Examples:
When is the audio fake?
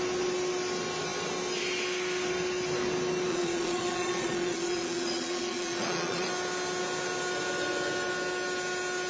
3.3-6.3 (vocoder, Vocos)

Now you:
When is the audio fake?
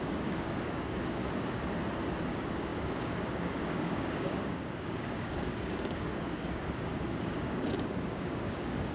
0.0-1.2 (codec, DAC); 2.3-8.9